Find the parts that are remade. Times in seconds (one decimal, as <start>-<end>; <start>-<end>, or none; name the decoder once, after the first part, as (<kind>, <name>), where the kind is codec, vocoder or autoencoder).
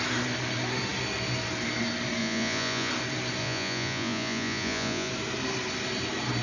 2.2-2.9 (vocoder, Vocos); 3.4-5.1